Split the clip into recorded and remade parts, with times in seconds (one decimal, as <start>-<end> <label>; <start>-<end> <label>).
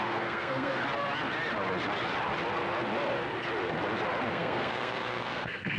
0.0-0.8 remade; 0.8-4.3 recorded; 4.3-5.8 remade